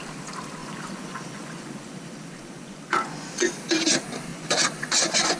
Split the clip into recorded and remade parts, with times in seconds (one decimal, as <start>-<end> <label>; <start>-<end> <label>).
0.0-0.6 recorded; 0.6-3.5 remade; 3.5-4.3 recorded; 4.3-5.4 remade